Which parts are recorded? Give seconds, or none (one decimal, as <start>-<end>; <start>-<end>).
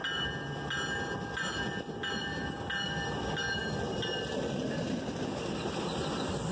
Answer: 0.0-6.5